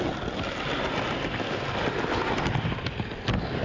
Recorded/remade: recorded